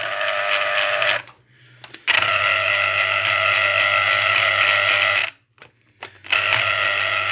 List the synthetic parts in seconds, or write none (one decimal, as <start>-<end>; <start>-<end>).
5.2-6.0